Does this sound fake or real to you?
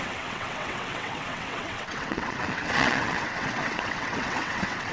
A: fake